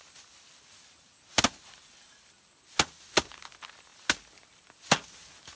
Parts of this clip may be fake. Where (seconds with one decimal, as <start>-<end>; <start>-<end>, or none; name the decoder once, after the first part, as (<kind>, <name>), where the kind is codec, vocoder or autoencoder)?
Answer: none